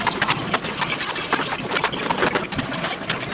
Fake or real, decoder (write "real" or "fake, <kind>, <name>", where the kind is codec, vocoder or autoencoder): real